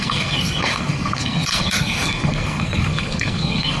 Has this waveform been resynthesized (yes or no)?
yes